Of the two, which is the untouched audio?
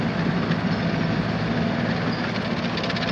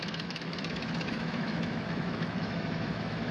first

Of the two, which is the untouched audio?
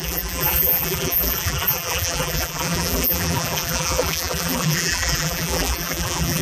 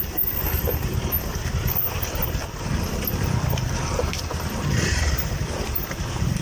second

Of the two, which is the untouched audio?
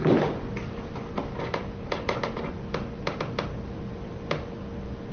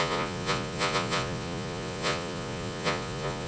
first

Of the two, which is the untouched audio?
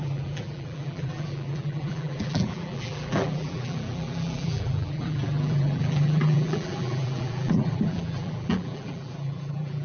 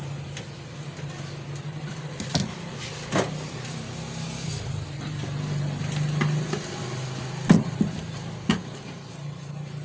second